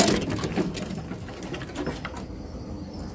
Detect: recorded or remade recorded